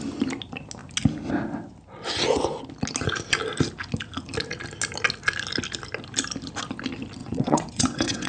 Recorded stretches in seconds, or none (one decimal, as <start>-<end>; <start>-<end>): 0.0-7.2